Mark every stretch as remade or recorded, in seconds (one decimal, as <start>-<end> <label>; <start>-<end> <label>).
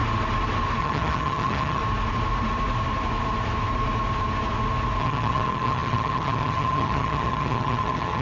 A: 0.0-0.8 recorded; 0.8-1.8 remade; 1.8-5.0 recorded; 5.0-8.2 remade